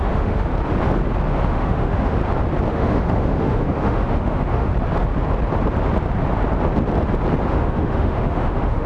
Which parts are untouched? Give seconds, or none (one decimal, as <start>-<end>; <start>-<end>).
0.5-1.4; 2.2-2.7; 4.7-7.5